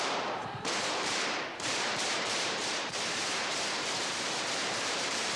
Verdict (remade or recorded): remade